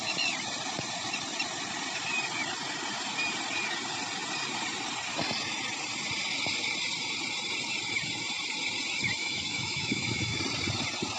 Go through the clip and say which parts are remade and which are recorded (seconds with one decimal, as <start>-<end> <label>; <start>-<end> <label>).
0.0-9.2 recorded; 9.2-10.4 remade; 10.4-11.2 recorded